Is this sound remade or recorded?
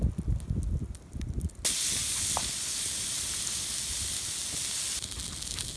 recorded